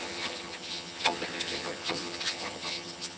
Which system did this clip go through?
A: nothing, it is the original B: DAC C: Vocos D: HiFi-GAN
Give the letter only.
D